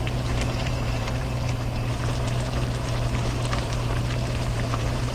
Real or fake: fake